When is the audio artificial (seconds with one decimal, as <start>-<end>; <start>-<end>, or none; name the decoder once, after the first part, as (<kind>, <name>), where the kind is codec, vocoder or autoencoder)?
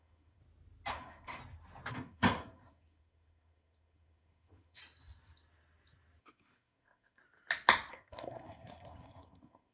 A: 0.0-0.4 (codec, SNAC); 0.9-1.4; 1.9-4.8; 6.2-7.2; 7.9-9.7